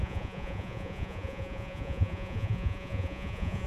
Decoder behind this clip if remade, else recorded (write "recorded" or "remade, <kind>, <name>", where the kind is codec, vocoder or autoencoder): remade, vocoder, Vocos